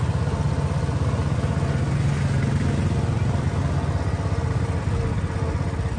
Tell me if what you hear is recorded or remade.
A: recorded